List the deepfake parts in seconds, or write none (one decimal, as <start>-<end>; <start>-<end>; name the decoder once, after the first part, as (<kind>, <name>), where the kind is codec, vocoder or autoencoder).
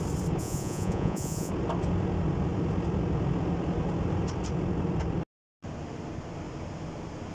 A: 0.4-1.5 (vocoder, Vocos)